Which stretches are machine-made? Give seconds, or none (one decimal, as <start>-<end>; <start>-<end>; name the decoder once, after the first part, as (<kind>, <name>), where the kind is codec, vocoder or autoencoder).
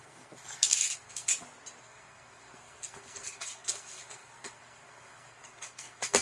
0.0-1.3 (codec, SNAC); 1.8-6.2